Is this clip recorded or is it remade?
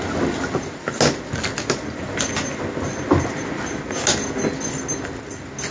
recorded